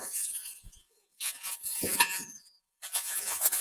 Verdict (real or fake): fake